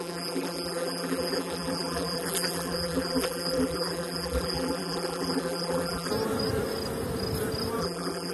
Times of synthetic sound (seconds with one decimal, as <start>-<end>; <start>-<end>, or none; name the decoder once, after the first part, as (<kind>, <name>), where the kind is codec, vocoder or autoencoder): 0.0-6.1 (vocoder, BigVGAN v2); 7.8-8.3